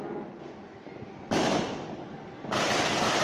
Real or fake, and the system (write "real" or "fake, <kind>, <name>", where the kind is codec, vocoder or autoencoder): real